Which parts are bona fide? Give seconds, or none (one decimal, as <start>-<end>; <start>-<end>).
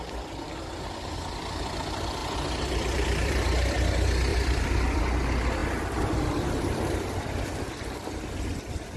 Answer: 0.0-2.2; 3.7-4.3; 5.0-9.0